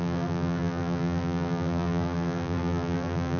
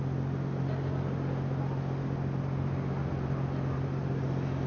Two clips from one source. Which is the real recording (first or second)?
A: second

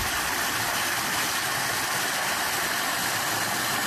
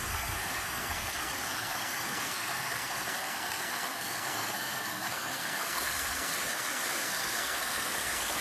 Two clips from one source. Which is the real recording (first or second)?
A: first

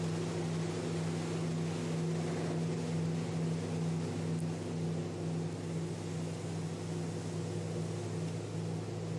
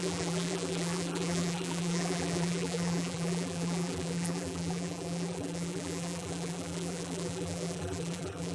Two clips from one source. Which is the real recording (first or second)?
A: first